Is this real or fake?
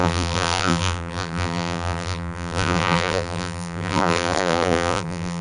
fake